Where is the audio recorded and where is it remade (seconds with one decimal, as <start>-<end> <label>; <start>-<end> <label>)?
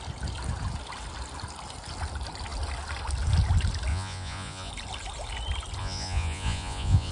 0.0-3.9 recorded; 3.9-4.7 remade; 4.7-5.8 recorded; 5.8-7.1 remade